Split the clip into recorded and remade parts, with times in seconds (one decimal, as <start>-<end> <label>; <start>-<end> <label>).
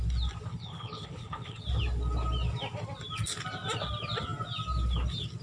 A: 0.0-0.5 recorded; 0.5-1.6 remade; 1.6-5.4 recorded